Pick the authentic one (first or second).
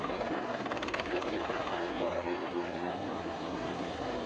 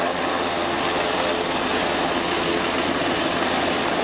second